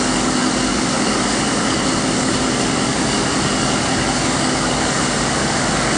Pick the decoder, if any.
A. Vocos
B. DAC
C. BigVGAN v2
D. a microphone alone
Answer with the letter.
B